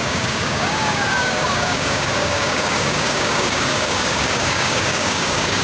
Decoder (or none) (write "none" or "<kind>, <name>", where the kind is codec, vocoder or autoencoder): codec, DAC